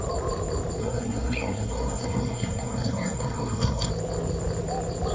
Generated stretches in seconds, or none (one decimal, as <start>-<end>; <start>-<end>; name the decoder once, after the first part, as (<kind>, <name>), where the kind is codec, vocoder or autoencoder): 0.8-3.9 (codec, SNAC)